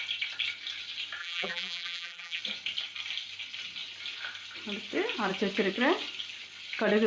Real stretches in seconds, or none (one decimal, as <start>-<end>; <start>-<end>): 0.0-1.2; 2.4-7.1